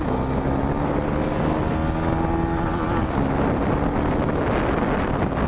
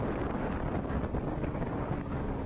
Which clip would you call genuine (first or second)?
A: first